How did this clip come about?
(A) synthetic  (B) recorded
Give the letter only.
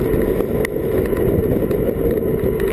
B